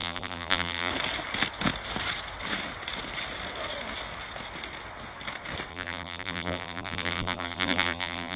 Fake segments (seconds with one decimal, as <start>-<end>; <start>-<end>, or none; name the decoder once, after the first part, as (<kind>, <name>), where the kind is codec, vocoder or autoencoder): 0.0-0.9 (vocoder, BigVGAN v2); 5.7-8.4